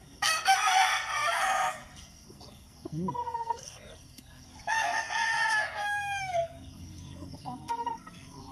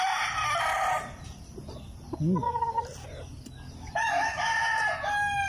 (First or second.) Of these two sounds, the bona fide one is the second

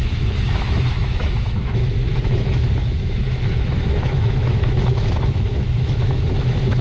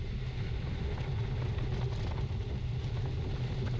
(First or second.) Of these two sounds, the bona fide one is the second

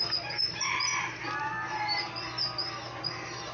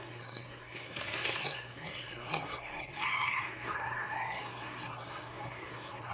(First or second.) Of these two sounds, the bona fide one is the first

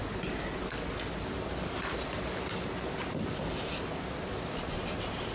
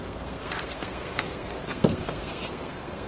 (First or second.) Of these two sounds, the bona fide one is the first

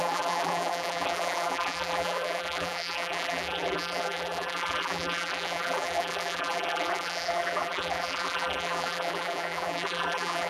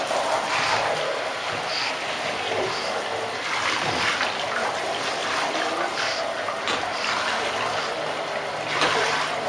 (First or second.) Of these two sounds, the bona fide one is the second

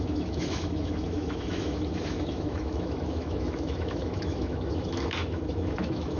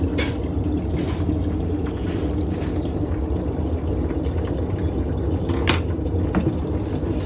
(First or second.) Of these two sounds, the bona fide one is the second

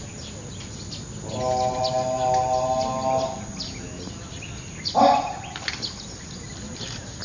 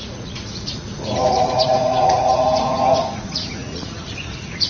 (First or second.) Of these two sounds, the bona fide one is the first